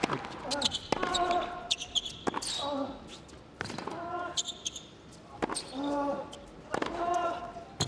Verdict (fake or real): real